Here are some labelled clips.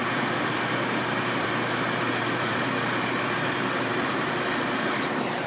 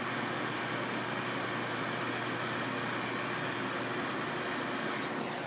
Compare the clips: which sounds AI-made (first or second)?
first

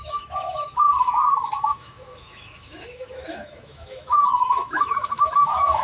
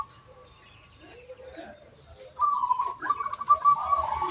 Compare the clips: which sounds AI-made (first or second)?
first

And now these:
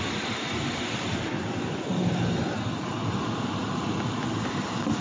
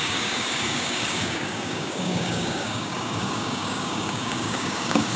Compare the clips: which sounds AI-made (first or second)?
second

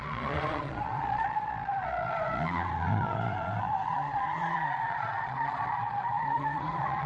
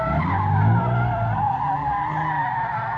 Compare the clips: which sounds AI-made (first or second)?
first